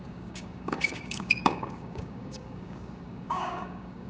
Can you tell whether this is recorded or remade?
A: remade